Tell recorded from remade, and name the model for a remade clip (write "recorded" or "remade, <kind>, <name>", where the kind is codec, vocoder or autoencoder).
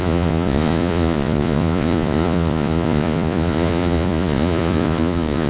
remade, vocoder, Vocos